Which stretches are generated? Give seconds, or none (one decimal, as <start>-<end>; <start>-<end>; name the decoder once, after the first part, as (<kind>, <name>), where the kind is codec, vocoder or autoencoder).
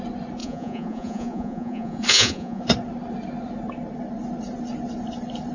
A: 0.4-2.6 (vocoder, Vocos)